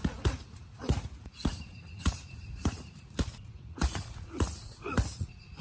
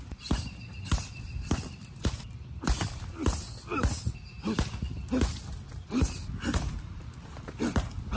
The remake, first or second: first